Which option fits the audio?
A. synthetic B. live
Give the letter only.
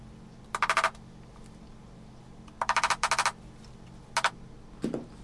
B